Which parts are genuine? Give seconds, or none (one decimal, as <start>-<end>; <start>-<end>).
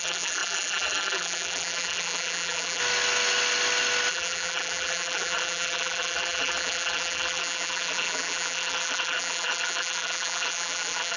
2.8-4.1